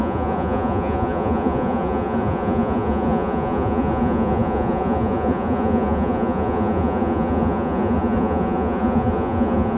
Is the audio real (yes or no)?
no